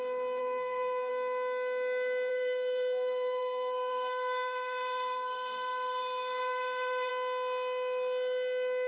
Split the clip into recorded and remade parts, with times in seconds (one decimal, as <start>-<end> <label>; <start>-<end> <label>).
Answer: 0.0-0.4 recorded; 0.4-1.1 remade; 1.1-2.3 recorded; 2.3-7.1 remade; 7.1-8.9 recorded